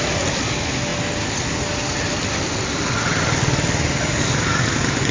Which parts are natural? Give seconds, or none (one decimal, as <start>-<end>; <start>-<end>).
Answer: 0.0-5.1